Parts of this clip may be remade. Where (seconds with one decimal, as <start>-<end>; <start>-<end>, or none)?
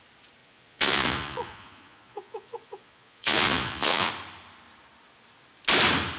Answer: 0.4-4.1